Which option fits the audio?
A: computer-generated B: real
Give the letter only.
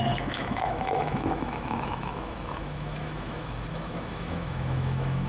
A